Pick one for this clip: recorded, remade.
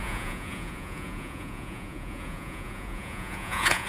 remade